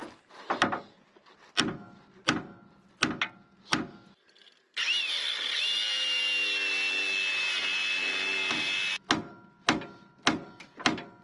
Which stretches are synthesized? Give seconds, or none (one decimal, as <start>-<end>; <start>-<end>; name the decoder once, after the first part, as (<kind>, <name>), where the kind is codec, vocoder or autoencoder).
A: none